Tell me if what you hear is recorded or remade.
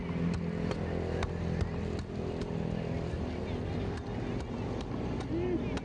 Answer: recorded